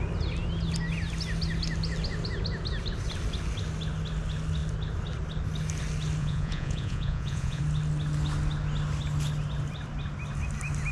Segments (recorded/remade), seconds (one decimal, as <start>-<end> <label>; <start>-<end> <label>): 0.0-6.2 recorded; 6.2-7.6 remade; 7.6-10.9 recorded